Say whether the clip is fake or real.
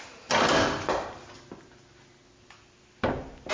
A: real